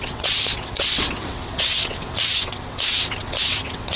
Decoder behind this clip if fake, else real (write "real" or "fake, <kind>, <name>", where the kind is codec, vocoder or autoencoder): fake, vocoder, WaveNeXt